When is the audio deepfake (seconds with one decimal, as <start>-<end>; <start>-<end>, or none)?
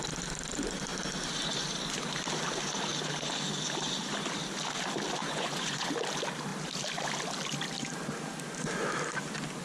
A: 5.2-5.9